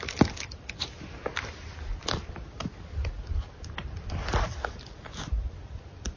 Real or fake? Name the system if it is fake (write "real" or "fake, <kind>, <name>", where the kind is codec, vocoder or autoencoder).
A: real